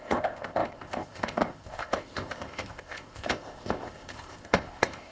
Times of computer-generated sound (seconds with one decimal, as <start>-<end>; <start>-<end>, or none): 0.0-5.1